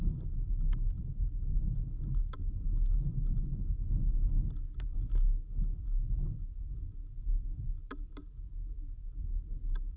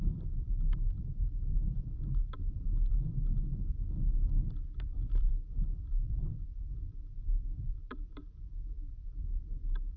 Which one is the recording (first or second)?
first